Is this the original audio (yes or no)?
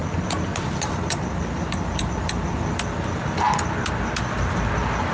yes